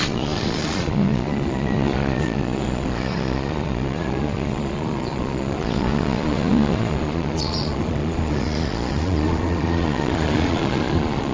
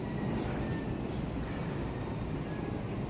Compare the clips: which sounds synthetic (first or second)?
first